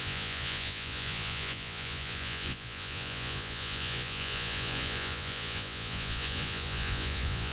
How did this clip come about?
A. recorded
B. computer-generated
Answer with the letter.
B